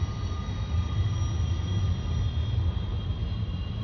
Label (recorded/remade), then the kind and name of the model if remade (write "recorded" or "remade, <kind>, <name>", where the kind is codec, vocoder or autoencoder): recorded